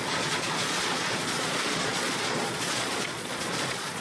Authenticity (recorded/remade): remade